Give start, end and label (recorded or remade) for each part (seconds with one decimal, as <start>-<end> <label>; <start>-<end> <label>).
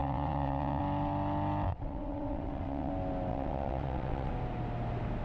0.0-0.8 remade; 0.8-1.7 recorded; 1.7-2.9 remade; 2.9-3.3 recorded; 3.3-4.3 remade; 4.3-5.2 recorded